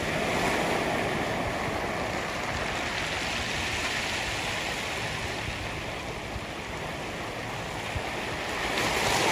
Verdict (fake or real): real